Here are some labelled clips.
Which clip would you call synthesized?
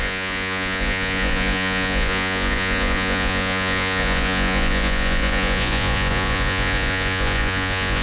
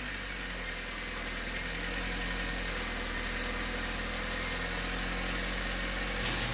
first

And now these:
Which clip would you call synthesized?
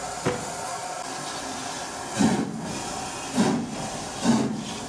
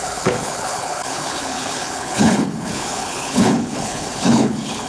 second